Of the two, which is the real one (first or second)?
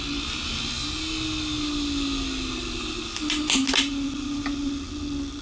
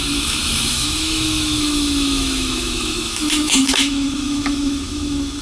first